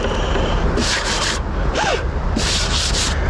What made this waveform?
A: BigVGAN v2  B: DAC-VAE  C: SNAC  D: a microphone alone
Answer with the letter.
A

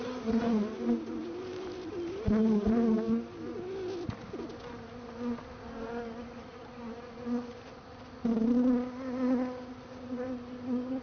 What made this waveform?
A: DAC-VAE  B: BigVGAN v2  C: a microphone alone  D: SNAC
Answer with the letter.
C